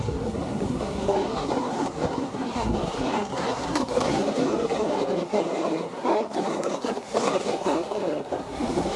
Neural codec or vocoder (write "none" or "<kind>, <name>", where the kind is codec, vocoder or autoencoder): codec, SNAC